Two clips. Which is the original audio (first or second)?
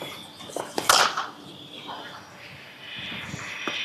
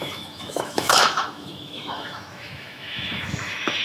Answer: first